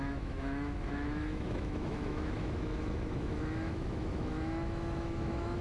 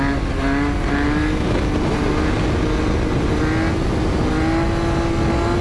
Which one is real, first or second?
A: second